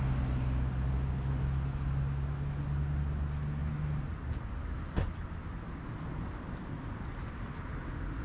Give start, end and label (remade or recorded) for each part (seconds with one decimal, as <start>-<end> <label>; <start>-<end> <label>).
0.0-3.6 recorded; 3.6-4.2 remade; 4.2-8.2 recorded